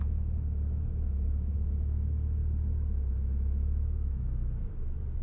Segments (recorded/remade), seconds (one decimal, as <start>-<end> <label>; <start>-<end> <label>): 0.0-2.4 remade; 2.4-3.1 recorded; 3.1-5.2 remade